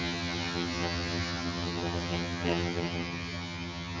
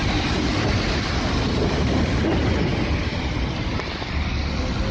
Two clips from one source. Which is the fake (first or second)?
first